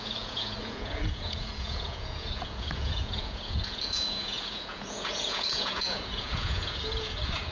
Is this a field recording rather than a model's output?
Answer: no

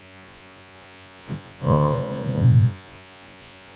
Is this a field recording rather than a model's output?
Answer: no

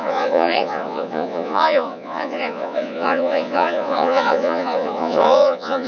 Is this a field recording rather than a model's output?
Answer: no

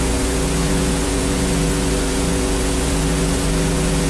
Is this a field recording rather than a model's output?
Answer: no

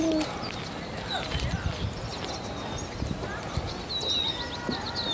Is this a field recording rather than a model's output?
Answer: yes